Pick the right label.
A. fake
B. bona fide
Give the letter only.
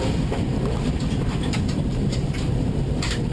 A